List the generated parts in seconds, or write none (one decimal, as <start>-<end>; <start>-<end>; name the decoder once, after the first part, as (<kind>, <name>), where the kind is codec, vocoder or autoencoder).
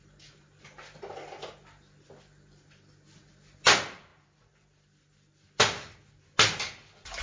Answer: none